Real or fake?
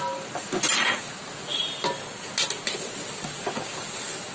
real